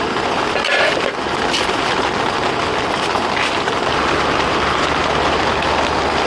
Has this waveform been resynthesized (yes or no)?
no